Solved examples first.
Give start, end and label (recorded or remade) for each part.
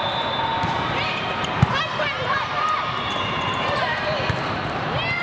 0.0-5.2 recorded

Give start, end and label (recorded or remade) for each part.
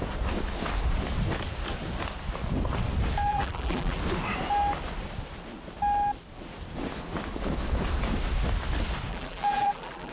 0.0-3.3 recorded; 3.3-4.0 remade; 4.0-9.1 recorded; 9.1-10.1 remade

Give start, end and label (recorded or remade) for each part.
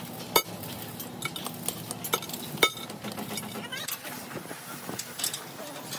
0.0-3.7 recorded; 3.7-5.4 remade; 5.4-6.0 recorded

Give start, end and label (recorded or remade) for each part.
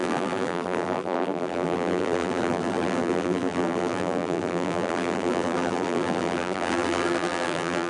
0.0-7.9 remade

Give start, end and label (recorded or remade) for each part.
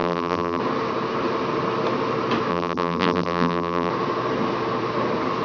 0.0-0.6 remade; 0.6-2.5 recorded; 2.5-3.9 remade; 3.9-5.4 recorded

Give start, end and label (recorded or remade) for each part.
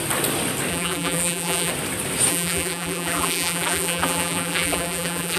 0.0-0.7 recorded; 0.7-1.7 remade; 1.7-2.3 recorded; 2.3-5.4 remade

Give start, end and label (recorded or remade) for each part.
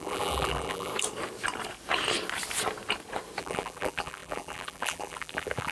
0.0-0.9 remade; 0.9-3.4 recorded; 3.4-5.7 remade